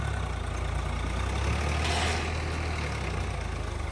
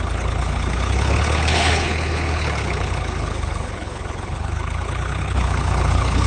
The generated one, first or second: second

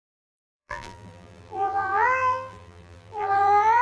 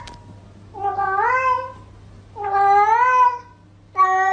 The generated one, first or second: first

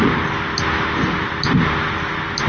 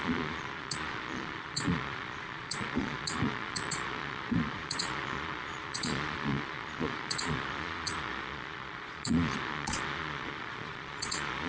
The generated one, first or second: second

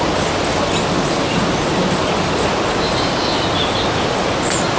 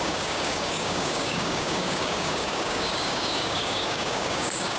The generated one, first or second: second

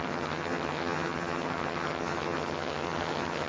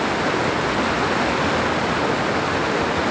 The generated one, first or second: first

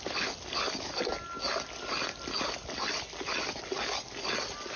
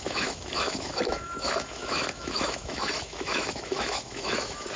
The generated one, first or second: second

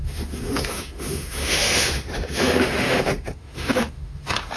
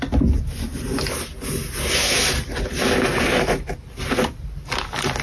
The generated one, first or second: first